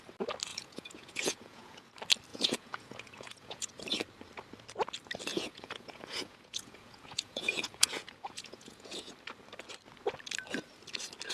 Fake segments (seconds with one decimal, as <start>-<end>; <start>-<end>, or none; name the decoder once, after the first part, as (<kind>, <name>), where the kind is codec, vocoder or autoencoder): 0.5-1.9 (vocoder, Vocos); 2.3-3.7; 5.3-9.1